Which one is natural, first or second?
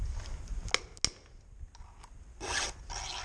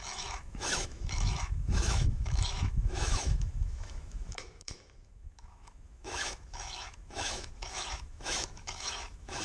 first